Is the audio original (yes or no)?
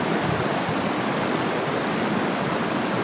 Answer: yes